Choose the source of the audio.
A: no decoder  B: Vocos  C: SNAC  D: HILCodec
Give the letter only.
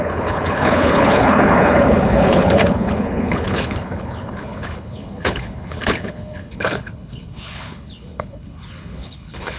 D